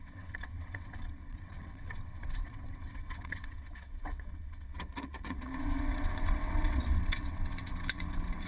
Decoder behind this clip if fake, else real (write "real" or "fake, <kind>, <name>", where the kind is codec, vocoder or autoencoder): fake, vocoder, WaveNeXt